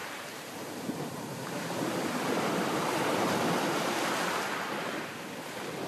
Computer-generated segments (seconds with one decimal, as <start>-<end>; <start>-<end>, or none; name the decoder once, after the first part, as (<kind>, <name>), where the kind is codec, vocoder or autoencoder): 0.0-3.5 (vocoder, BigVGAN v2)